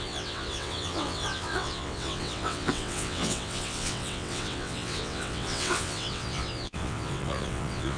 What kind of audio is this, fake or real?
fake